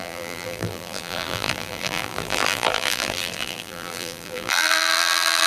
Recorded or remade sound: remade